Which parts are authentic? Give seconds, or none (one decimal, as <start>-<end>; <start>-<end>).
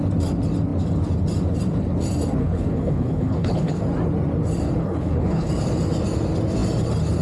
0.0-2.4; 3.8-4.8; 5.5-7.2